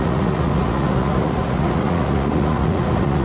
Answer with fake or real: fake